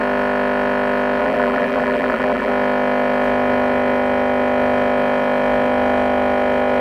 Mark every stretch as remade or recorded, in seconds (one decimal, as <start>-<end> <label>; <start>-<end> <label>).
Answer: 0.0-1.2 recorded; 1.2-2.5 remade; 2.5-6.8 recorded

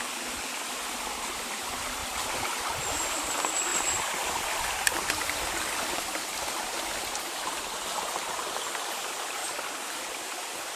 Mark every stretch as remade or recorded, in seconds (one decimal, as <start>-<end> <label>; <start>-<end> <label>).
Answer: 0.0-3.7 recorded; 3.7-5.0 remade; 5.0-9.4 recorded; 9.4-10.0 remade; 10.0-10.8 recorded